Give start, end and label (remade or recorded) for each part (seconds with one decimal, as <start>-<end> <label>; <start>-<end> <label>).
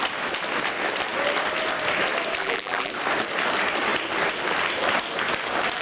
0.0-2.4 recorded; 2.4-2.9 remade; 2.9-5.8 recorded